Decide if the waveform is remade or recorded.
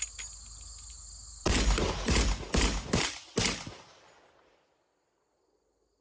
recorded